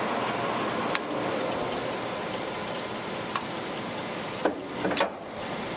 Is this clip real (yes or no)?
yes